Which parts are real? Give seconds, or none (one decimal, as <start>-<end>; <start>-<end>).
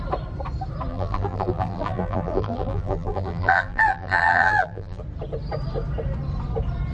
0.0-0.9; 5.0-6.9